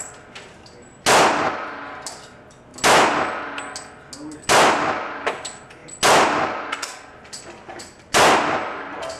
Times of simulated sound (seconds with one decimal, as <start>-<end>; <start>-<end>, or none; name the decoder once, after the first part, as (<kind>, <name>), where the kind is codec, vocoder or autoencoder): none